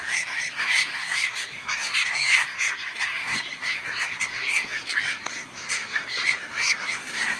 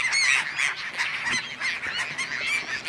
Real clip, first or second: second